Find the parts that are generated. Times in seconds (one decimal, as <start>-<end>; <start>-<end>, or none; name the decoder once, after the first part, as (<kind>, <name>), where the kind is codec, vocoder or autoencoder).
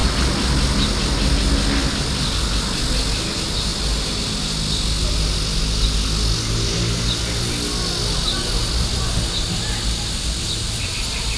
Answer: none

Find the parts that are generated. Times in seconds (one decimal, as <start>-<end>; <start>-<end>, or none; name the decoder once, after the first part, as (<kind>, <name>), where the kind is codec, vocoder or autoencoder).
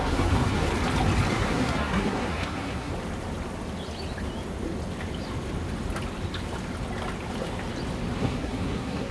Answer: 0.0-0.7 (codec, SNAC); 1.3-2.9; 8.2-9.1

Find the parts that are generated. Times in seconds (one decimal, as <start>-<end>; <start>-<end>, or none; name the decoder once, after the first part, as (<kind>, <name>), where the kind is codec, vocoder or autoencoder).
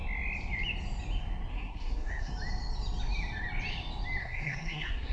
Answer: 1.5-2.3 (codec, SNAC); 4.2-5.1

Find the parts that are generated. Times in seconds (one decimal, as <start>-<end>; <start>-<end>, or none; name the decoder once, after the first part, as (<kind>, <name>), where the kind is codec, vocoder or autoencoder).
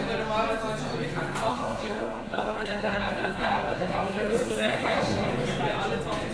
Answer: 1.5-5.3 (codec, SNAC)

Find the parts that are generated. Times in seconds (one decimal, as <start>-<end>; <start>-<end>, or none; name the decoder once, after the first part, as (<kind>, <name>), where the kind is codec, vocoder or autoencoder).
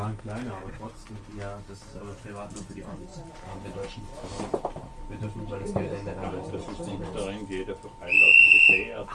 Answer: none